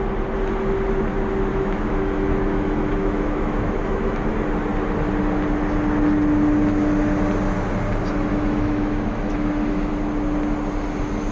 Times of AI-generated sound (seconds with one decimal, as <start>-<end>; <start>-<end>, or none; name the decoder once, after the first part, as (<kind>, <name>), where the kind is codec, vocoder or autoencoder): 1.5-4.3 (autoencoder, DAC-VAE); 8.3-9.9